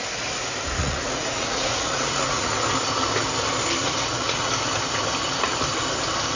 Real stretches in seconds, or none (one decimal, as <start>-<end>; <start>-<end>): 0.0-0.8; 2.5-3.8; 4.5-6.4